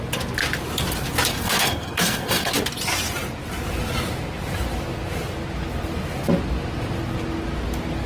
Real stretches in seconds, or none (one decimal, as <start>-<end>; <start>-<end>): 0.0-1.3; 2.5-8.1